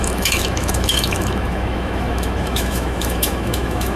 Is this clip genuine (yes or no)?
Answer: no